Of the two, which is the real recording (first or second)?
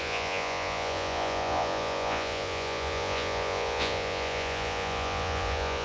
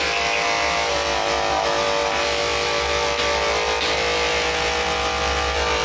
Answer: second